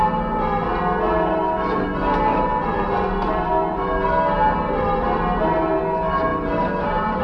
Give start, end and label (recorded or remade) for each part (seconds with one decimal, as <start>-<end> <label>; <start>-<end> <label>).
0.0-7.2 recorded